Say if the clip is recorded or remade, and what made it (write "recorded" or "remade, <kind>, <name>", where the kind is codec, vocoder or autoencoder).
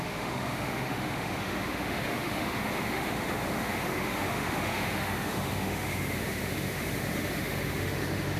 remade, autoencoder, DAC-VAE